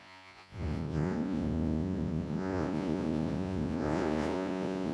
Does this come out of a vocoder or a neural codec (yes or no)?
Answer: yes